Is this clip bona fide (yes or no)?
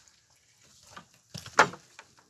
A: yes